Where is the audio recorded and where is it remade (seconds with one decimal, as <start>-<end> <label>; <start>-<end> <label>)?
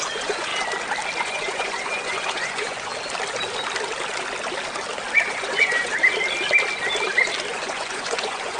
0.0-0.5 remade; 0.5-1.2 recorded; 1.2-2.9 remade; 2.9-5.3 recorded; 5.3-5.9 remade; 5.9-7.5 recorded; 7.5-8.6 remade